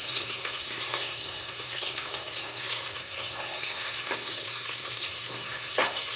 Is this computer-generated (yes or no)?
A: yes